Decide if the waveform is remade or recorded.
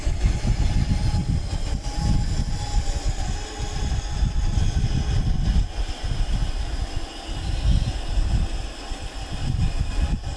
recorded